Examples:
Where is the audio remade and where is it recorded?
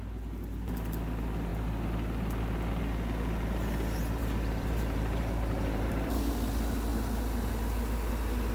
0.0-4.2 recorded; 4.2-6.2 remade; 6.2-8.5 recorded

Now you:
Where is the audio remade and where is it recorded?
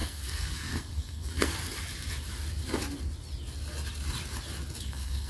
0.0-1.6 remade; 1.6-4.8 recorded; 4.8-5.3 remade